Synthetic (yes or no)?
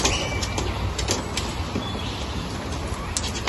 no